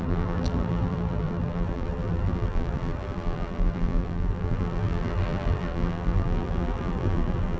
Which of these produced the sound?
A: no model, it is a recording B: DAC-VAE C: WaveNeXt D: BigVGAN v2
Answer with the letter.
D